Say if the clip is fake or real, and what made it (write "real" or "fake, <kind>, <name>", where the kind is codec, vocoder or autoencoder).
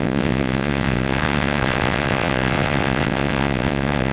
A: fake, vocoder, WaveNeXt